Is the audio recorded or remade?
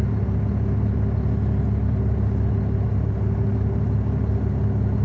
recorded